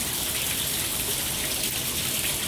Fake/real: real